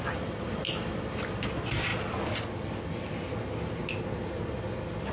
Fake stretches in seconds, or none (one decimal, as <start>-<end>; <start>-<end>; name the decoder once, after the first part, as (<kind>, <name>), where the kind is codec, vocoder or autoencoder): none